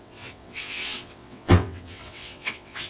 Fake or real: fake